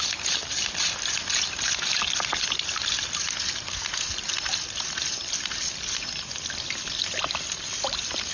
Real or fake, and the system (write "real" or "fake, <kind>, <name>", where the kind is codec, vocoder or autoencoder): real